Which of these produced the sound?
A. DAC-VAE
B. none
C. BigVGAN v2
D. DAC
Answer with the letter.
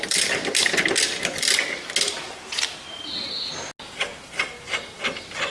B